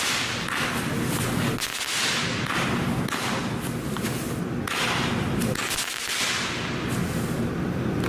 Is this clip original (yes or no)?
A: yes